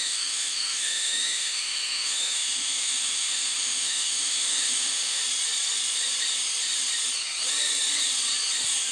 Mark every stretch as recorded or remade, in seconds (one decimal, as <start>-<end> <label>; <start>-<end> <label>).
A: 0.0-5.2 remade; 5.2-8.9 recorded